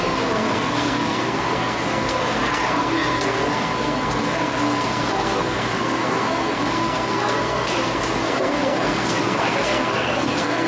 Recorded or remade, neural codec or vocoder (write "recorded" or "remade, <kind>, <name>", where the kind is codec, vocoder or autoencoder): remade, codec, SNAC